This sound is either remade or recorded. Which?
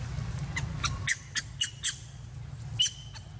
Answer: recorded